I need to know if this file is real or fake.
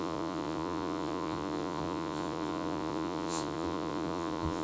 fake